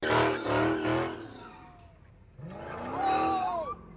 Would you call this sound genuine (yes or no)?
yes